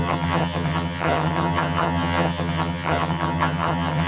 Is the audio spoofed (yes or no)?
yes